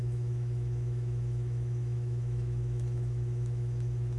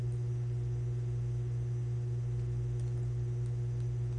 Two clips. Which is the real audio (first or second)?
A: second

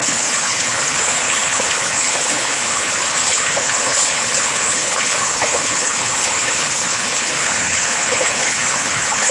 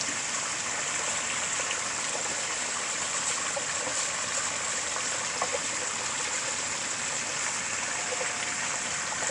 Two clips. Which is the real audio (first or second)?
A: second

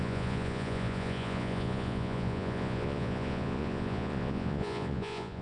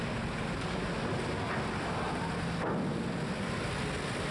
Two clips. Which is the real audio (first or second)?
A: second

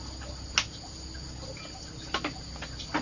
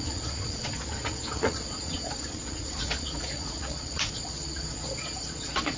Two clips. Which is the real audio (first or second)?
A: first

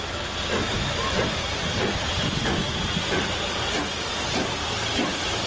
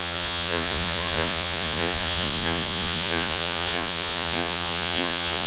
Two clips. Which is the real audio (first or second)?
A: first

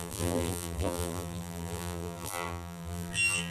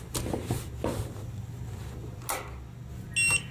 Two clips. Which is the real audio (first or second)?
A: second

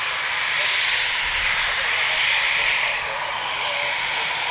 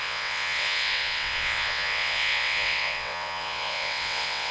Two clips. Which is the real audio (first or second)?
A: first